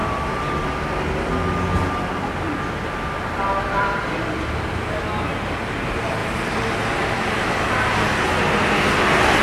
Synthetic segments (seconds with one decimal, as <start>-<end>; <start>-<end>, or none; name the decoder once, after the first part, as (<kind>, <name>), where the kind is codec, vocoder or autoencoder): 0.0-0.6 (vocoder, BigVGAN v2); 6.2-7.5

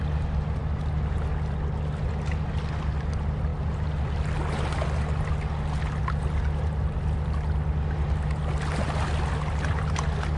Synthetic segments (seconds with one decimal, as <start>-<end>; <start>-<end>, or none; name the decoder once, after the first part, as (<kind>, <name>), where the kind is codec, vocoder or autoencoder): none

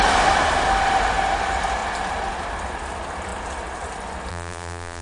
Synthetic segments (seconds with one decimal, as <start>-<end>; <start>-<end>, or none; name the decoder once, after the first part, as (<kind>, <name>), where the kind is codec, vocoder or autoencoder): 4.3-5.0 (vocoder, BigVGAN v2)

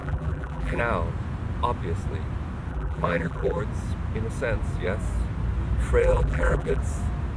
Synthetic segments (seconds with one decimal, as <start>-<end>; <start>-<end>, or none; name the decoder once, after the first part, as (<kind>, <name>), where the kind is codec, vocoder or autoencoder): 0.0-0.8 (vocoder, BigVGAN v2); 2.7-3.6; 6.0-6.8

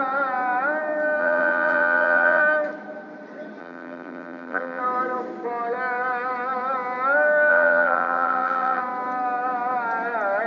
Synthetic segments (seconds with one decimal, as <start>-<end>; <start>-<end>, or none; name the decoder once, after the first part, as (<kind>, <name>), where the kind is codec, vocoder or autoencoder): 1.2-2.4 (vocoder, BigVGAN v2); 3.6-4.8; 7.5-8.8

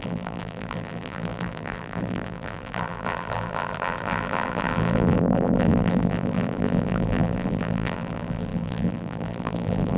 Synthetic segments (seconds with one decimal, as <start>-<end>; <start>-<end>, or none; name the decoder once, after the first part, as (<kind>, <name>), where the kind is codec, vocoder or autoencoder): 0.0-10.0 (vocoder, BigVGAN v2)